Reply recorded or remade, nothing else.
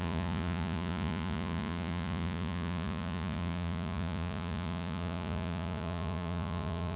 remade